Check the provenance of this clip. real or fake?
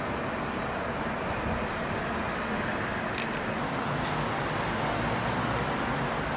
real